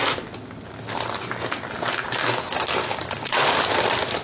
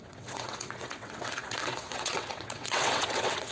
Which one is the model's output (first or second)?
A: second